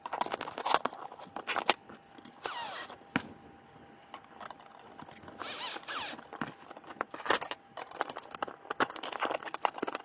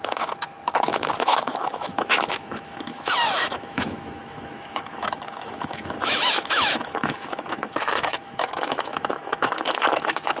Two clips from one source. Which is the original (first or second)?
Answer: first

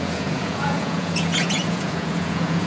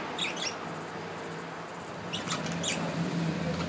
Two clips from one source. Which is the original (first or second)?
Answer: second